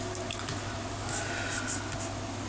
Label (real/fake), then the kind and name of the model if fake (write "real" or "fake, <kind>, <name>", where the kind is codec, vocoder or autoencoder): real